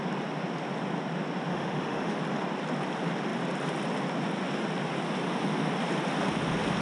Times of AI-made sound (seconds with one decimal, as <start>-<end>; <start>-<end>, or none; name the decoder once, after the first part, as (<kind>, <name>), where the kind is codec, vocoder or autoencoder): 1.5-2.2 (autoencoder, DAC-VAE)